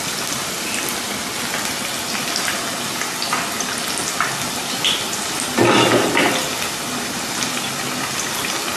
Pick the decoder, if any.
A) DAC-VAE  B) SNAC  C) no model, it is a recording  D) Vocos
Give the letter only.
C